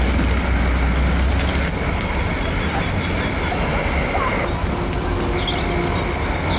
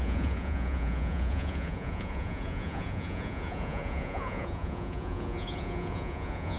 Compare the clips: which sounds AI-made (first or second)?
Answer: second